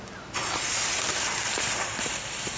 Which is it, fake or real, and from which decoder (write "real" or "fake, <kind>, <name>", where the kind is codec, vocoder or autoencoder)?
real